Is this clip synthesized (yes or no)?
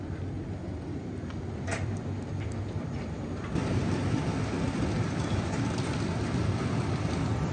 yes